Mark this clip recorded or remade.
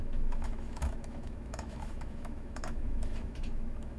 remade